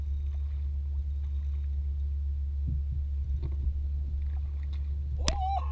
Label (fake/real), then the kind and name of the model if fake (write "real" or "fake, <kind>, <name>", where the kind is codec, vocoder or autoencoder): real